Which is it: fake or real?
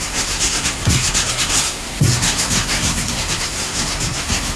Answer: fake